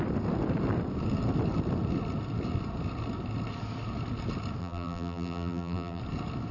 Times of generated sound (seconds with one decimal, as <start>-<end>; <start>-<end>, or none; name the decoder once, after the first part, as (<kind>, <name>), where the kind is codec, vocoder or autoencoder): 4.6-6.0 (vocoder, BigVGAN v2)